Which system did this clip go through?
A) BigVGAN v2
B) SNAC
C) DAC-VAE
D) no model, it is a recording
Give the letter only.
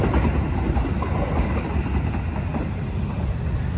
D